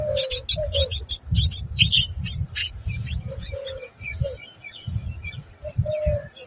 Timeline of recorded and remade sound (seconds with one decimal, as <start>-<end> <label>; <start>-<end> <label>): 0.0-2.6 recorded; 2.6-5.5 remade; 5.5-6.5 recorded